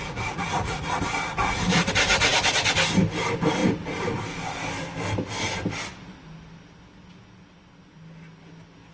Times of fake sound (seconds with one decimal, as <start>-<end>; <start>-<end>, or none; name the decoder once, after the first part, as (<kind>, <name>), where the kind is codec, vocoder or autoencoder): 0.0-1.0 (vocoder, Vocos)